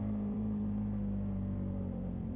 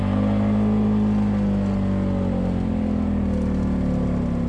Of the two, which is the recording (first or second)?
second